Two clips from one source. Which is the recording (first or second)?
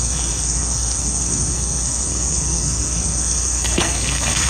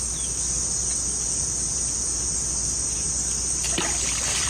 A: second